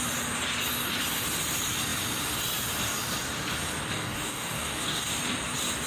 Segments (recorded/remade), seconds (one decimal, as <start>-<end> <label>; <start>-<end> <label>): 0.0-3.9 recorded; 3.9-5.1 remade; 5.1-5.9 recorded